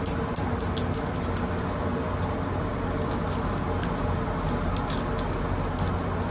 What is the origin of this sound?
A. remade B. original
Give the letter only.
B